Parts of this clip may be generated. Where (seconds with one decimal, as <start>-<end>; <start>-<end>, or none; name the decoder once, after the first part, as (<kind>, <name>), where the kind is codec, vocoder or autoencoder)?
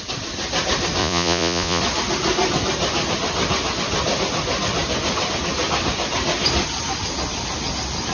1.0-1.8 (vocoder, Vocos)